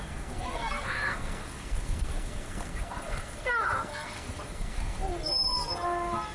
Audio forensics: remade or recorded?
remade